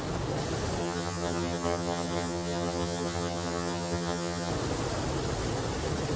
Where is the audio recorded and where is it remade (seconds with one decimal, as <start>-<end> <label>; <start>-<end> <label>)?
0.0-0.8 recorded; 0.8-4.5 remade; 4.5-6.2 recorded